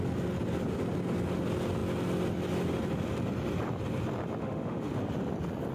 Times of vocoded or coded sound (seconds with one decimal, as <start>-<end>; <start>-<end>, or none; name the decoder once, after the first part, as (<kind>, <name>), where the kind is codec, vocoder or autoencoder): 4.4-4.9 (autoencoder, DAC-VAE)